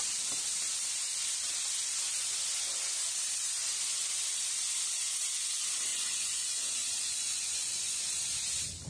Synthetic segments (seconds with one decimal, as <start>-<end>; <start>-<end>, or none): 5.9-8.2